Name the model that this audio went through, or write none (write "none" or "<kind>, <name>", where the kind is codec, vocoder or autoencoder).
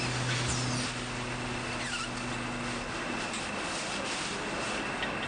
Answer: none